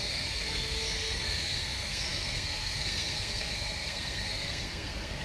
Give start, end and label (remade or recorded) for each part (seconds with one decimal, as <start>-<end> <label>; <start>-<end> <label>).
0.0-5.2 remade